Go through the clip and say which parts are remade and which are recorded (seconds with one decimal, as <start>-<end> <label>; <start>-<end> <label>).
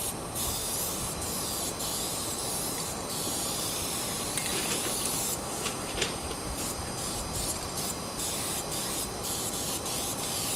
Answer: 0.0-10.6 remade